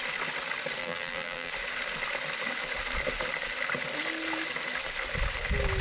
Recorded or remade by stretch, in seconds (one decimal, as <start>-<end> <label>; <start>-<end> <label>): 0.0-0.8 recorded; 0.8-1.5 remade; 1.5-5.8 recorded